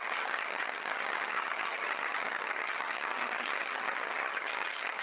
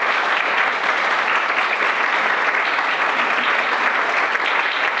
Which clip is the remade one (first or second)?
first